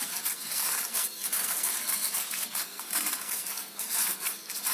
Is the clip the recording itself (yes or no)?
no